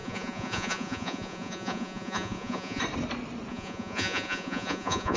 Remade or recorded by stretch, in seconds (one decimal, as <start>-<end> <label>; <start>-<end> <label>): 0.0-2.8 remade; 2.8-3.5 recorded; 3.5-5.2 remade